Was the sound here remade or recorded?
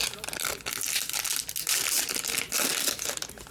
recorded